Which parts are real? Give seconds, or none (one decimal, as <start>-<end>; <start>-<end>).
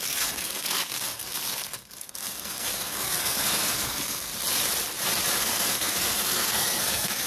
4.3-5.4